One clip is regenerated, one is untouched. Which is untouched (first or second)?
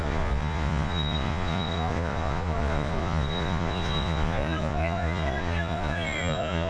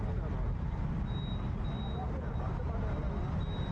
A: second